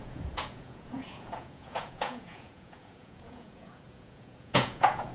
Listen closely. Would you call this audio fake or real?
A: fake